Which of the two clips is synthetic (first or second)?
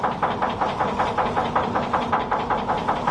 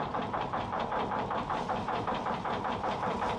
second